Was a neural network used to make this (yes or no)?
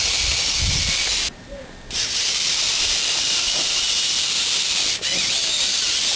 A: no